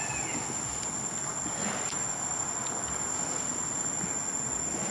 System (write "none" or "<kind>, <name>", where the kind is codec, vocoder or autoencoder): none